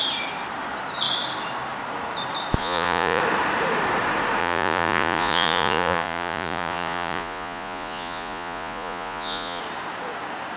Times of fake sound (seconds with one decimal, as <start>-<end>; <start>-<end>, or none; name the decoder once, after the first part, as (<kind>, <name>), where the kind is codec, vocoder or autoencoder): 2.6-3.2 (vocoder, Vocos); 4.4-9.6